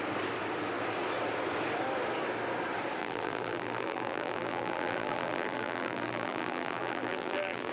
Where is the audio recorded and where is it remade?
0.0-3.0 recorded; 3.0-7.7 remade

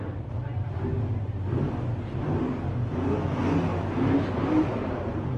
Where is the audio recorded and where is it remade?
0.0-3.7 recorded; 3.7-5.4 remade

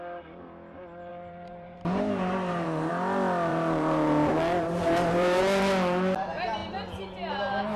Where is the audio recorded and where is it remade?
0.0-1.1 recorded; 1.1-2.9 remade; 2.9-3.5 recorded; 3.5-5.4 remade; 5.4-7.8 recorded

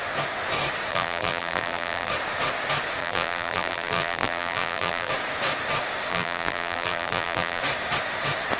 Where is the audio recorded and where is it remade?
0.0-0.9 recorded; 0.9-2.1 remade; 2.1-3.0 recorded; 3.0-5.1 remade; 5.1-6.1 recorded; 6.1-7.6 remade; 7.6-8.6 recorded

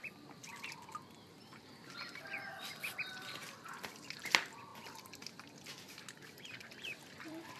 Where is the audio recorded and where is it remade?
0.0-0.4 remade; 0.4-2.6 recorded; 2.6-4.7 remade; 4.7-6.7 recorded; 6.7-7.6 remade

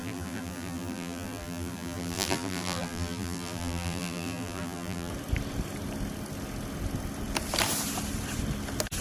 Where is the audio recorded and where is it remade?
0.0-5.1 remade; 5.1-9.0 recorded

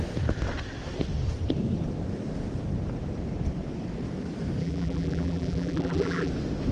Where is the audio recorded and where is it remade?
0.0-4.6 recorded; 4.6-6.3 remade; 6.3-6.7 recorded

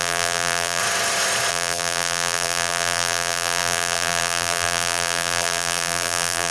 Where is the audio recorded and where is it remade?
0.0-0.8 remade; 0.8-1.5 recorded; 1.5-6.5 remade